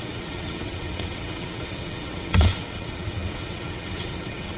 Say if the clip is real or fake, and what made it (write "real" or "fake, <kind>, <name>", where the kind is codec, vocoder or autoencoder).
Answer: fake, vocoder, WaveNeXt